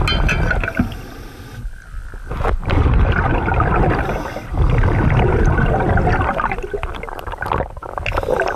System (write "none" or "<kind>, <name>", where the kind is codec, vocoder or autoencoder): none